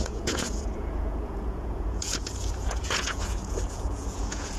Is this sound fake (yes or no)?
yes